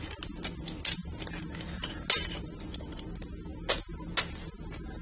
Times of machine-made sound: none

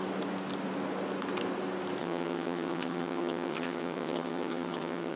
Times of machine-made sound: 2.0-5.2 (vocoder, HiFi-GAN)

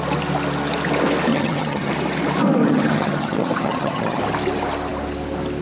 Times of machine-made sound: 1.3-1.9 (vocoder, HiFi-GAN); 2.6-4.2

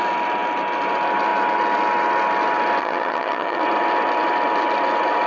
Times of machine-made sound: 2.8-3.6 (vocoder, HiFi-GAN)